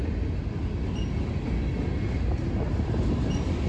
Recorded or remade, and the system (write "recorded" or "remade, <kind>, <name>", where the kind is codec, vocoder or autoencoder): recorded